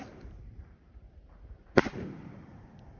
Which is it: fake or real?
fake